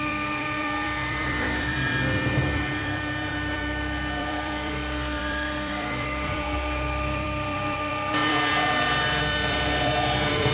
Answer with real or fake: fake